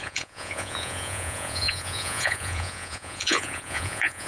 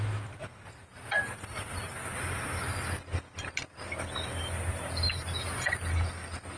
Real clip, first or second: second